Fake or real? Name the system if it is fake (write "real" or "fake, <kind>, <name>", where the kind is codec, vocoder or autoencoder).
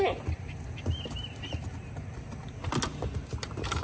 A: real